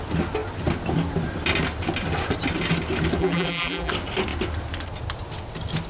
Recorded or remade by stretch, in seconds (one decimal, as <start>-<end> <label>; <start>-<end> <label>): 0.0-3.2 recorded; 3.2-3.9 remade; 3.9-5.9 recorded